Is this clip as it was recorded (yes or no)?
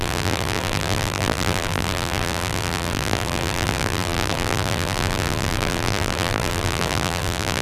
no